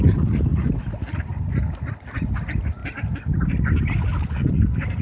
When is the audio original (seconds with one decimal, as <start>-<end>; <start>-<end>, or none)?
0.0-0.5; 1.5-5.0